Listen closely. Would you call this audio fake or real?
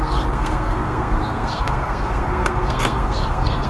fake